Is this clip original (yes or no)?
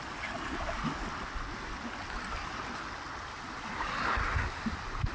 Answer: yes